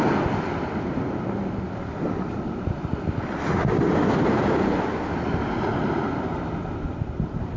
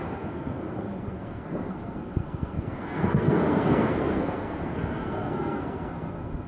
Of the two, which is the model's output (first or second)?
second